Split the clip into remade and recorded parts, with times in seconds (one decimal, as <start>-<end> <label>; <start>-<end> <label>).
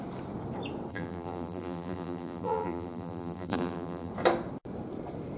0.0-0.9 recorded; 0.9-4.1 remade; 4.1-5.4 recorded